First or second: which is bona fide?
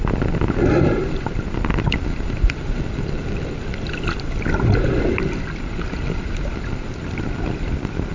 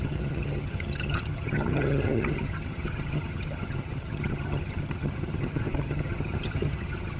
first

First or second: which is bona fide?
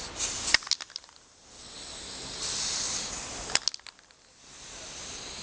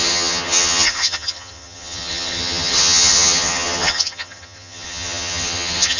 first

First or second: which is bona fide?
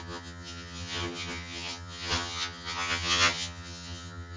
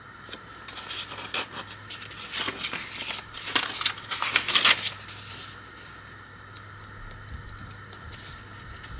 second